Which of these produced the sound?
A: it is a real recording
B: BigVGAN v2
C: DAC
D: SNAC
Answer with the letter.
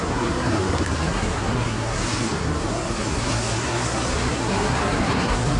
D